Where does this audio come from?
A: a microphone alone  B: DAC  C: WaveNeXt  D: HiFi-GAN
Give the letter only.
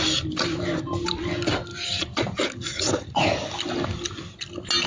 A